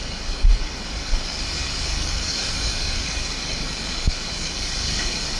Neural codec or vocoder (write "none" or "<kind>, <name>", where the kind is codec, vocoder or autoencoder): codec, DAC